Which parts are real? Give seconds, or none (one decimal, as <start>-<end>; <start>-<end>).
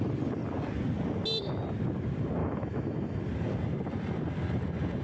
0.0-2.4; 3.2-5.0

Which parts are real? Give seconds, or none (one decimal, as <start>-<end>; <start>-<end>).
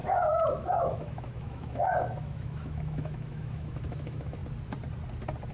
4.4-5.5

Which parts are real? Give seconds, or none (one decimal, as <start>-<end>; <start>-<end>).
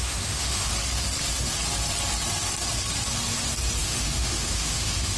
0.7-3.8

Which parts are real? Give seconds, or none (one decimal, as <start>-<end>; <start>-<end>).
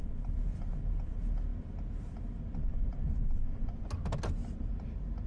0.0-5.3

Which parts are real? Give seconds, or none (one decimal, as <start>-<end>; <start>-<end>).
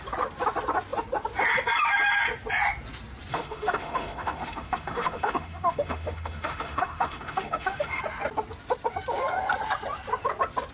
0.0-3.3; 8.0-10.7